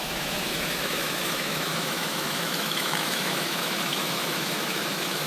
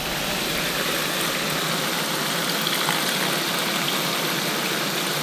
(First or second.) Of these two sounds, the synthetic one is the first